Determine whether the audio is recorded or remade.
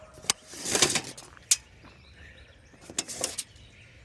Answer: recorded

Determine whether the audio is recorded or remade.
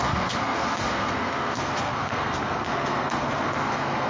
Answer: remade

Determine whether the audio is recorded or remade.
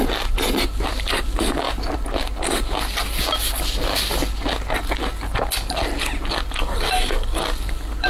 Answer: recorded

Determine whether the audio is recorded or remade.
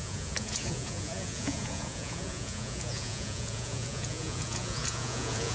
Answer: remade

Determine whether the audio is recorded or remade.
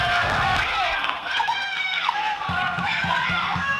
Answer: remade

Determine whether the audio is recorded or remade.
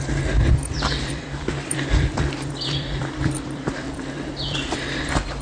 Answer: remade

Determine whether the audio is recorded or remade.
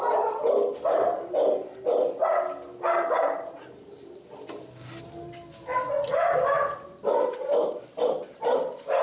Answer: recorded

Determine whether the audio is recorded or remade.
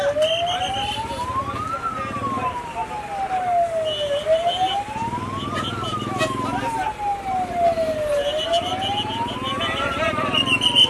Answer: recorded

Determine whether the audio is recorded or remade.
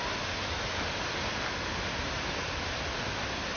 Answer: recorded